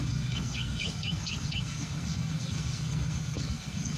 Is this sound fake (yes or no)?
yes